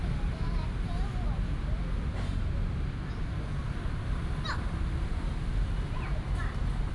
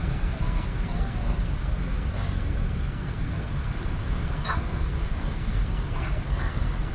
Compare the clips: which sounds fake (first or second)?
second